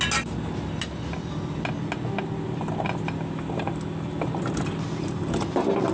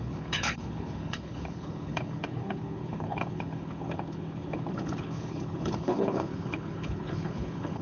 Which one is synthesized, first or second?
second